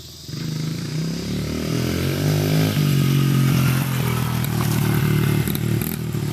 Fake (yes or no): no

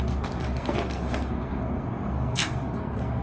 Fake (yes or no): yes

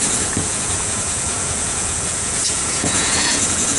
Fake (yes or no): yes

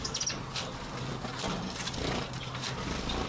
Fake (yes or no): no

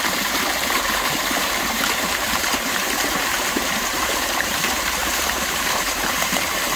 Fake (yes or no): yes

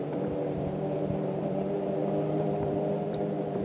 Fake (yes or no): yes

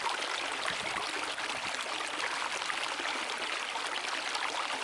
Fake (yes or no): no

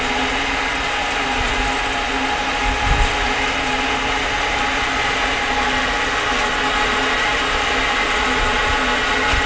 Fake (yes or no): no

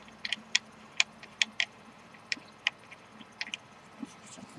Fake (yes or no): no